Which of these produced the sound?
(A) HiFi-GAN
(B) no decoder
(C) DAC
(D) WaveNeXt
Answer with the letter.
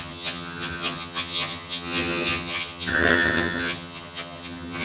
A